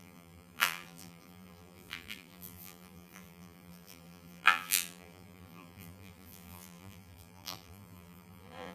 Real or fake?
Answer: fake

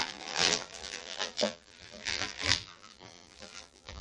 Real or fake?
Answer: fake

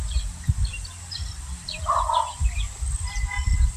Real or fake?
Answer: real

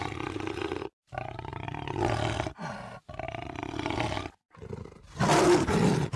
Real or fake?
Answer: real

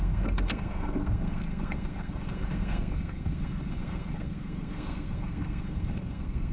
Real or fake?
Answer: fake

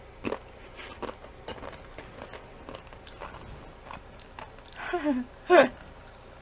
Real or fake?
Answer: real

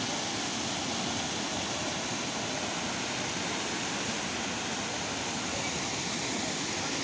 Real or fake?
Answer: real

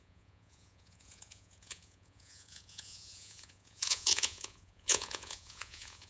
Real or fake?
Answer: fake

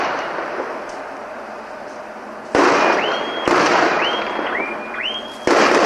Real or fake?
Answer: real